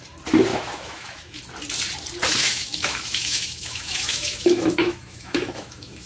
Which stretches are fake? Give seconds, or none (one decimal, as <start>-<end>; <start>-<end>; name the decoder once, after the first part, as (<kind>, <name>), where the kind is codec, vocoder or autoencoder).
0.5-1.4 (autoencoder, DAC-VAE); 2.4-6.1